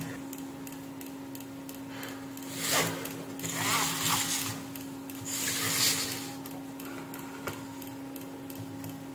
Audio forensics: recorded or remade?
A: recorded